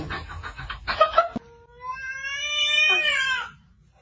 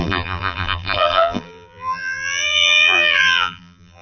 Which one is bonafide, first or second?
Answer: first